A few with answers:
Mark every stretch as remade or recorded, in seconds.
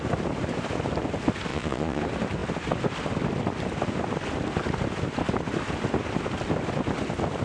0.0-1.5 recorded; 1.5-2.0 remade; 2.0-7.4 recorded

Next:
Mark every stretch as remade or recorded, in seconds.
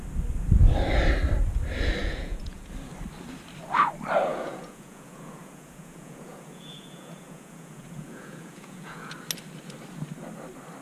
0.0-2.0 recorded; 2.0-2.7 remade; 2.7-4.3 recorded; 4.3-9.1 remade; 9.1-10.8 recorded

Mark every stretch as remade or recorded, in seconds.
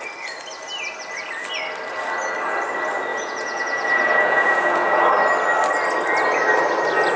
0.0-3.1 recorded; 3.1-5.0 remade; 5.0-7.2 recorded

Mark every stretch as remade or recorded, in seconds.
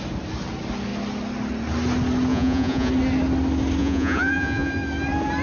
0.0-2.3 recorded; 2.3-2.9 remade; 2.9-3.8 recorded; 3.8-4.7 remade; 4.7-5.4 recorded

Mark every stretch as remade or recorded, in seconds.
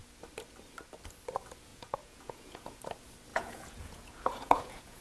0.0-1.7 recorded; 1.7-2.8 remade; 2.8-3.3 recorded; 3.3-5.0 remade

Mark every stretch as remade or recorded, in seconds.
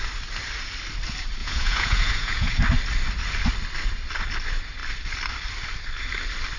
0.0-1.4 recorded; 1.4-2.6 remade; 2.6-6.6 recorded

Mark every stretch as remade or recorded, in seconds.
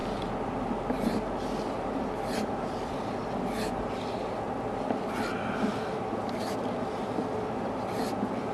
0.0-8.5 recorded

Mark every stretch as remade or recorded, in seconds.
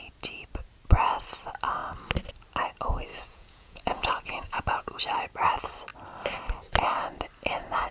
0.0-3.1 recorded; 3.1-5.0 remade; 5.0-7.9 recorded